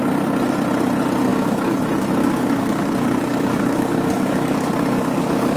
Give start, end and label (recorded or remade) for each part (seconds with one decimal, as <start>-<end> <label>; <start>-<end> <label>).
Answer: 0.0-1.3 recorded; 1.3-1.8 remade; 1.8-2.2 recorded; 2.2-5.6 remade